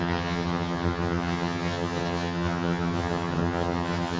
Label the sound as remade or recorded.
remade